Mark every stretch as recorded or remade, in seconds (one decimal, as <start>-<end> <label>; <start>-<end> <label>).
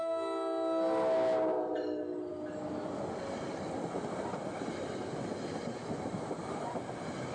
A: 0.0-7.3 recorded